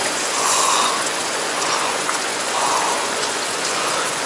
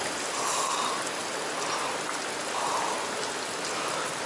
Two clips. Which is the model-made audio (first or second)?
first